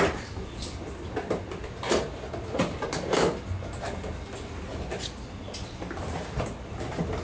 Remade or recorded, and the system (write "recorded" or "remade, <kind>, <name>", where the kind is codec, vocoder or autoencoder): recorded